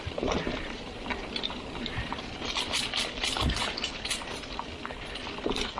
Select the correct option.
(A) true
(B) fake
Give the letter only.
B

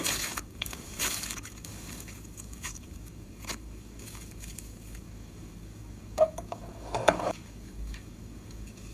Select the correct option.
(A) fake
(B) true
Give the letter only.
A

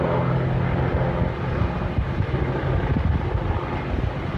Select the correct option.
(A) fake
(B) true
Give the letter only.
B